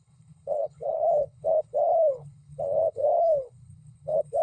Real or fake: fake